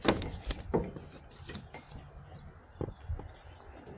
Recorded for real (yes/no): yes